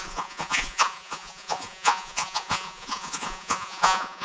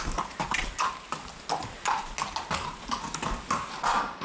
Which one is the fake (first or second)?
first